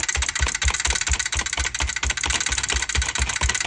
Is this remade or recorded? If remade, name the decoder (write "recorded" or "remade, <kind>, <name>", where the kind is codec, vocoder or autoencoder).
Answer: recorded